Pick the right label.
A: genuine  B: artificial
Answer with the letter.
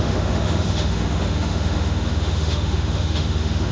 B